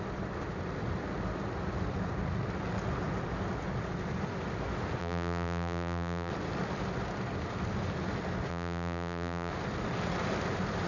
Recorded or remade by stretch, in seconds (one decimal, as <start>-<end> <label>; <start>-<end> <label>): 0.0-5.0 recorded; 5.0-6.3 remade; 6.3-8.5 recorded; 8.5-9.5 remade; 9.5-10.9 recorded